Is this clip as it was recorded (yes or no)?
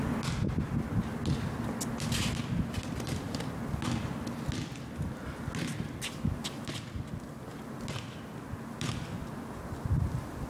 yes